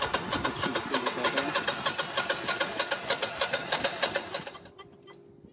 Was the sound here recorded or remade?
recorded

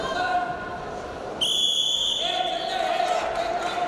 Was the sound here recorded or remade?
recorded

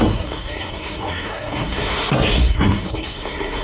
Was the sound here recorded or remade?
remade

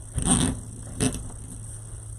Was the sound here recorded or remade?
recorded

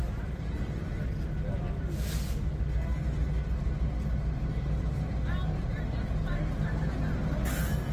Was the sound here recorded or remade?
recorded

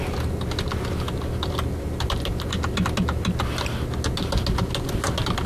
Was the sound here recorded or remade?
recorded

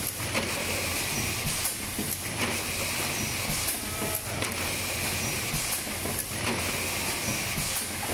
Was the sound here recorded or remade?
recorded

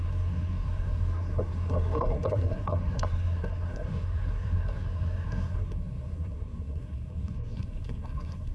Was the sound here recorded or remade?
remade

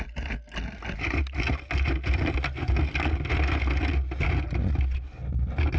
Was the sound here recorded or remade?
recorded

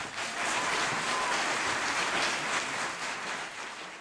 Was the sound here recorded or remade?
recorded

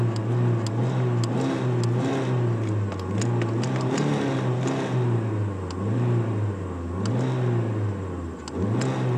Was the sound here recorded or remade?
recorded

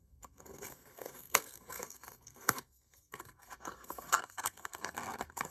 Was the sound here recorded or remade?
remade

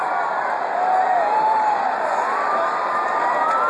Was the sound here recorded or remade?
recorded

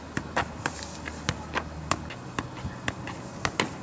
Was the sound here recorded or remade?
recorded